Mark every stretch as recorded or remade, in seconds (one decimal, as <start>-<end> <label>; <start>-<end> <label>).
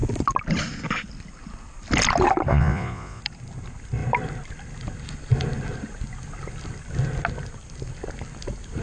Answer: 0.0-2.5 recorded; 2.5-3.2 remade; 3.2-8.8 recorded